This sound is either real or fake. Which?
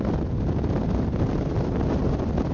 real